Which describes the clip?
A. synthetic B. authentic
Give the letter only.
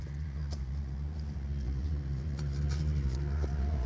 A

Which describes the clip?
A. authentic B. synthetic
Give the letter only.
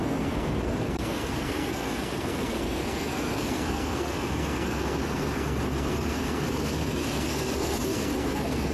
B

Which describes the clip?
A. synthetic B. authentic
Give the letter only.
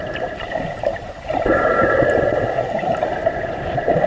A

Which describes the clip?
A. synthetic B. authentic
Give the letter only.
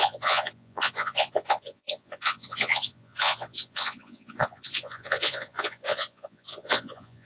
A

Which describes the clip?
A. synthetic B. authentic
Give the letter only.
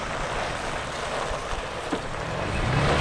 A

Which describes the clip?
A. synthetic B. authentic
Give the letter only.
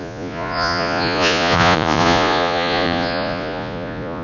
A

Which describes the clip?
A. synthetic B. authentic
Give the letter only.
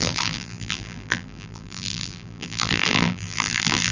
A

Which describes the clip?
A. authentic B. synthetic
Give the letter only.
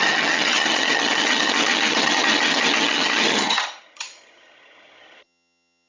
B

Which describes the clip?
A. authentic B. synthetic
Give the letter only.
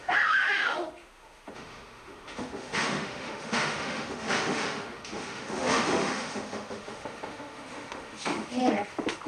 B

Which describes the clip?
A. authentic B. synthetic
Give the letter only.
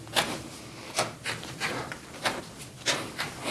A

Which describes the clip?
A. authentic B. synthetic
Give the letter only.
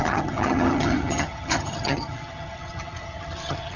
B